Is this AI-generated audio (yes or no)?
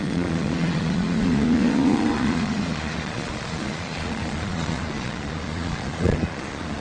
yes